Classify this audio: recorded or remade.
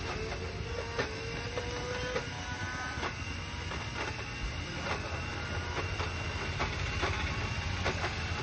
recorded